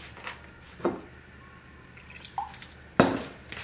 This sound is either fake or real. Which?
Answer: real